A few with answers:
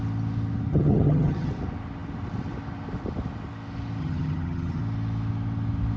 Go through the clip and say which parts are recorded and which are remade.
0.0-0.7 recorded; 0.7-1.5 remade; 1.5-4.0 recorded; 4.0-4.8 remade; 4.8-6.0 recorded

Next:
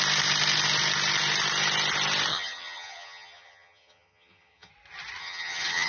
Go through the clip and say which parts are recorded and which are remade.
0.0-2.3 recorded; 2.3-4.7 remade; 4.7-5.2 recorded; 5.2-5.9 remade

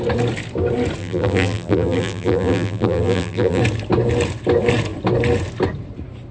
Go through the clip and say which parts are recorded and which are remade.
0.0-1.0 recorded; 1.0-3.6 remade; 3.6-6.3 recorded

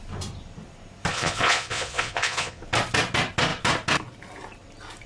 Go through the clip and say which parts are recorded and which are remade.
0.0-1.1 recorded; 1.1-2.6 remade; 2.6-5.1 recorded

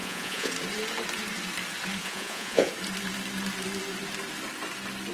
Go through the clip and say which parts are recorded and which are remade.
0.0-0.5 remade; 0.5-2.0 recorded; 2.0-2.7 remade; 2.7-5.1 recorded

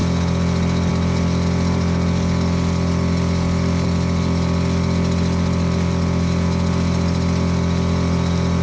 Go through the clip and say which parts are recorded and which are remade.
0.0-8.6 recorded